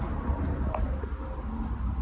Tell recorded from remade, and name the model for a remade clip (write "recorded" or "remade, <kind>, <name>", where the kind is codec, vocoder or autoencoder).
recorded